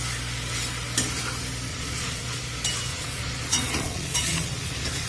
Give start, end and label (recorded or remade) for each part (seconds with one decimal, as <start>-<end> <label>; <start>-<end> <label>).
0.0-1.7 recorded; 1.7-2.4 remade; 2.4-2.9 recorded; 2.9-5.1 remade